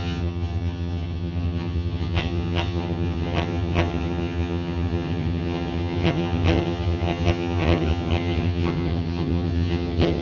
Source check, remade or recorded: remade